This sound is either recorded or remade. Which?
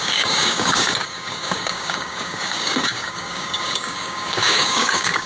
remade